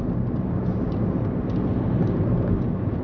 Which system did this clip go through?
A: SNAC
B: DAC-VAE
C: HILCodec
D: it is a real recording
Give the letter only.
D